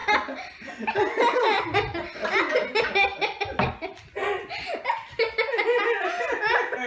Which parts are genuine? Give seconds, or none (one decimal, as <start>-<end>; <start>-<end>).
0.0-6.9